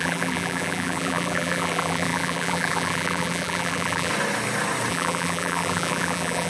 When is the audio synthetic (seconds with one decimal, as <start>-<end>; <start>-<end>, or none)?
0.0-4.1; 4.9-6.5